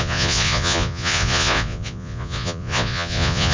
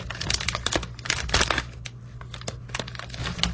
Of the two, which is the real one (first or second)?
second